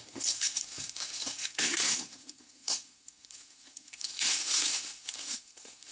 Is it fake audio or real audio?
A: fake